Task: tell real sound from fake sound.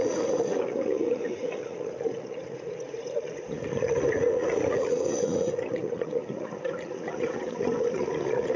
fake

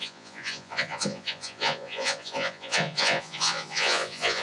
fake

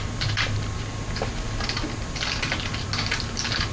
real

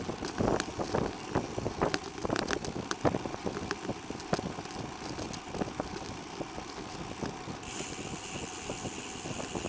real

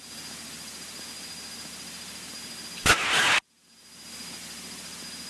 real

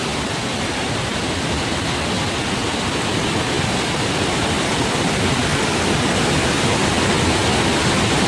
real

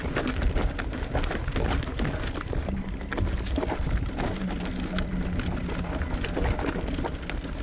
real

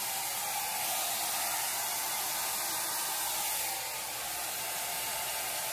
real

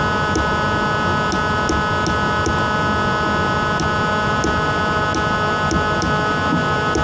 real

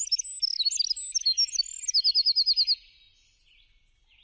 real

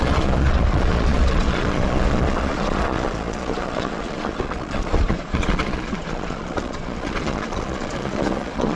fake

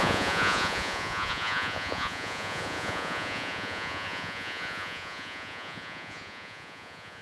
fake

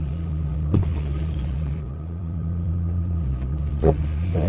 fake